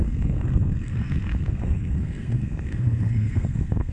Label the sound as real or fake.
fake